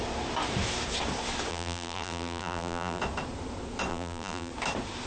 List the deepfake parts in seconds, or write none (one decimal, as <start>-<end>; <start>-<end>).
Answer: 1.5-3.0; 3.9-4.5